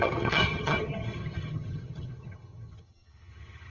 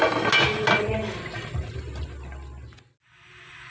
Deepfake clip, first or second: first